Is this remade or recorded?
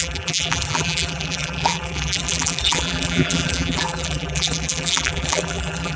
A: remade